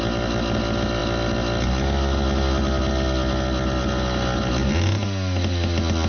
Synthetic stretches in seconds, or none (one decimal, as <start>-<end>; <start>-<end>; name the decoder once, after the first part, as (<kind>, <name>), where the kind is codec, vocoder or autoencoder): none